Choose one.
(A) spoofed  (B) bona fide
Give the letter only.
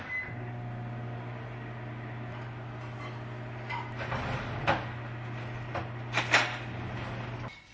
B